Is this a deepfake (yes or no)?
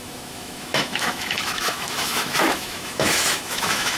yes